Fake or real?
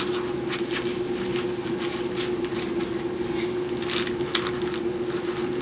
real